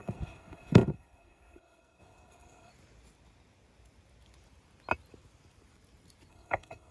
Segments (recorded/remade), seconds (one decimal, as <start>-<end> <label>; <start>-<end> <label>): 0.0-2.7 remade; 2.7-6.3 recorded; 6.3-6.9 remade